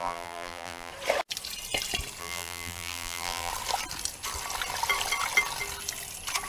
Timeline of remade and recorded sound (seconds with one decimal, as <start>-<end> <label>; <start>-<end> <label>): 0.0-0.9 remade; 0.9-2.2 recorded; 2.2-3.5 remade; 3.5-6.5 recorded